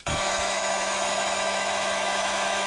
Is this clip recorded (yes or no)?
no